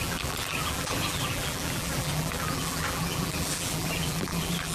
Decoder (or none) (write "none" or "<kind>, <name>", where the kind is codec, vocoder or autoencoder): vocoder, BigVGAN v2